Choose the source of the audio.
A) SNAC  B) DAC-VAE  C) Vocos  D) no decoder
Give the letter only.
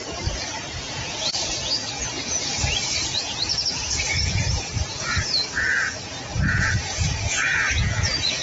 C